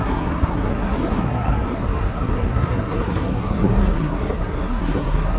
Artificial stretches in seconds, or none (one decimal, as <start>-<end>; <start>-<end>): 0.0-5.4